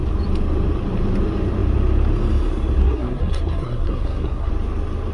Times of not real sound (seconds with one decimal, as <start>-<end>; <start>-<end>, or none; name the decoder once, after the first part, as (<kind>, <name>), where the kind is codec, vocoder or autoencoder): 2.8-4.5 (codec, SNAC)